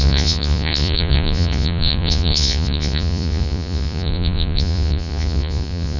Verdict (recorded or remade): remade